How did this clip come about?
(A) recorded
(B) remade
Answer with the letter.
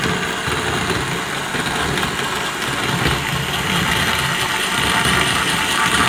A